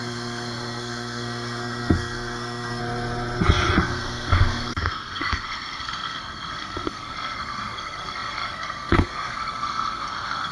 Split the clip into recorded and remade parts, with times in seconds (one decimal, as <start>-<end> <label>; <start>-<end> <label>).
0.0-2.8 remade; 2.8-3.8 recorded; 3.8-10.5 remade